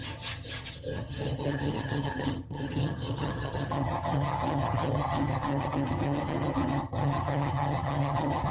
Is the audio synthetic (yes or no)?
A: yes